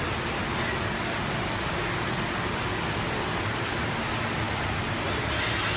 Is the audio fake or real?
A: real